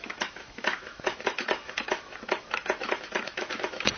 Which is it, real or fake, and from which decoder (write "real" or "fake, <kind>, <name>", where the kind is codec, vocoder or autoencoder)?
fake, autoencoder, DAC-VAE